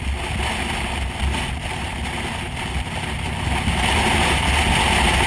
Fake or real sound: real